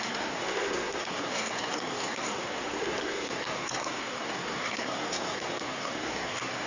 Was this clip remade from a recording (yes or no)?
yes